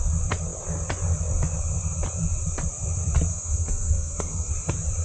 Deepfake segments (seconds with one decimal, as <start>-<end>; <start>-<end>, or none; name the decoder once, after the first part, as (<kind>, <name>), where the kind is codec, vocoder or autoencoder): 3.3-4.5 (codec, SNAC)